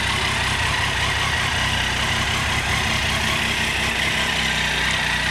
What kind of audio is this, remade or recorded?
recorded